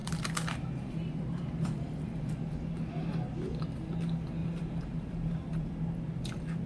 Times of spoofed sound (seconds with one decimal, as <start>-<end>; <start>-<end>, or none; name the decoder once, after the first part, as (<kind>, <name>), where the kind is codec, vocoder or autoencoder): 0.0-2.3 (vocoder, BigVGAN v2); 4.4-5.7